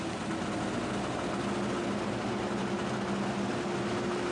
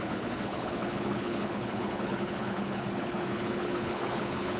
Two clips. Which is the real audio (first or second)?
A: first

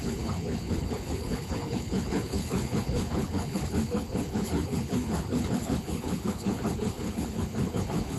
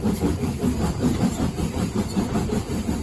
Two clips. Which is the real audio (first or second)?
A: second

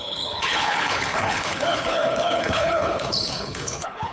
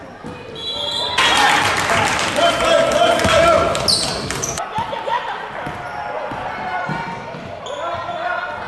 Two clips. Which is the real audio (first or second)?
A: second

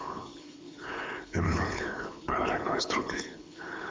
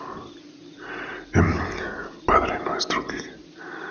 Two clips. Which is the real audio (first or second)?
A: second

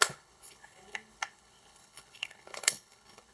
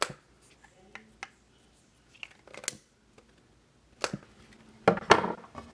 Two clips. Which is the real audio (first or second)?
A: second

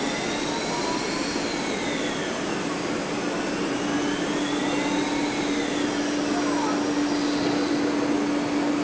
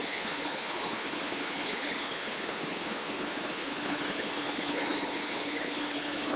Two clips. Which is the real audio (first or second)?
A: first